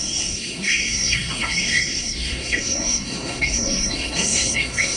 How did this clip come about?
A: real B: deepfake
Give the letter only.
B